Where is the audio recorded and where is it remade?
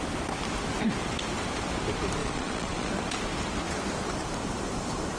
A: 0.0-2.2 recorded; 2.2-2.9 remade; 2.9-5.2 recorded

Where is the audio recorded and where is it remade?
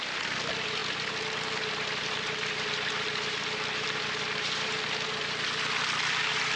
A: 0.0-6.6 recorded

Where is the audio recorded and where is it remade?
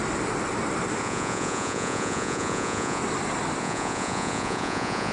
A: 0.0-1.0 recorded; 1.0-3.0 remade; 3.0-3.6 recorded; 3.6-5.1 remade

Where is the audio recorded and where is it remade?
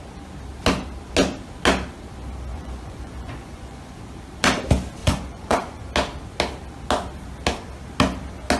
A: 0.0-2.5 recorded; 2.5-4.0 remade; 4.0-5.0 recorded; 5.0-5.9 remade; 5.9-8.6 recorded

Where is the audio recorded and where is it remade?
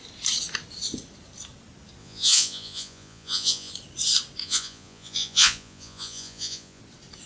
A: 0.0-2.0 recorded; 2.0-3.7 remade; 3.7-4.4 recorded; 4.4-6.8 remade; 6.8-7.3 recorded